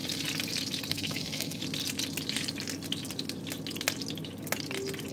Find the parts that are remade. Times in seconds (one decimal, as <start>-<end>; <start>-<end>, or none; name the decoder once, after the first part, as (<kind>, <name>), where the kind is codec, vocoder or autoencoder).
0.9-1.6 (codec, SNAC)